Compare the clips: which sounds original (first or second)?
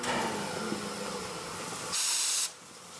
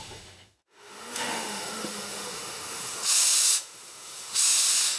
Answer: first